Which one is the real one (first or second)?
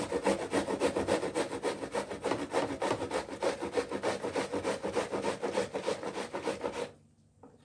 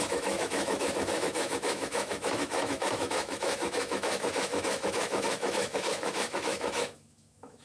first